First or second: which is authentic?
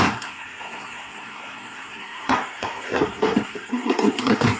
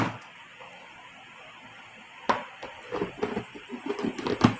second